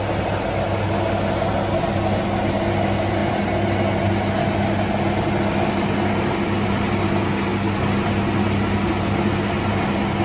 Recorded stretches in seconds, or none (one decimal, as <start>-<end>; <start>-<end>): 0.0-10.2